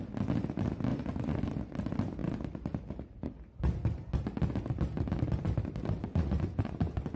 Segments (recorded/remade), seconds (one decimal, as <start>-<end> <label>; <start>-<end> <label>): 0.0-0.9 recorded; 0.9-1.4 remade; 1.4-6.1 recorded; 6.1-7.2 remade